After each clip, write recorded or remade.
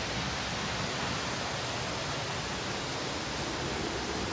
recorded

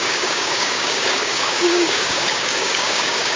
remade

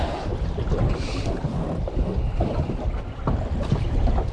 recorded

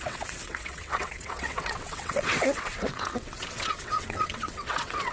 remade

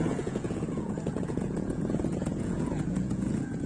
remade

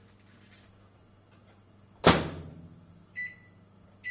recorded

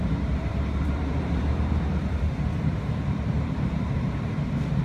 remade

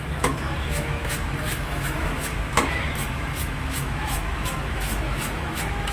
remade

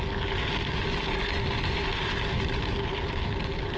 recorded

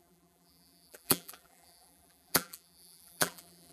remade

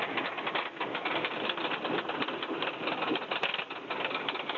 recorded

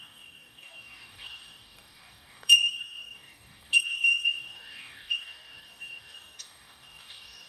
remade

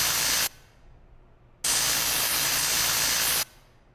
recorded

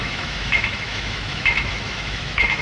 remade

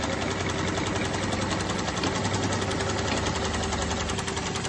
recorded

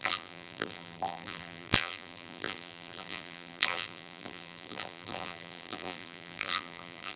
remade